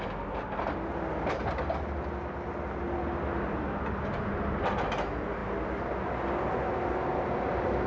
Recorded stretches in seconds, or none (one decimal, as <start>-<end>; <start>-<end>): 0.0-7.9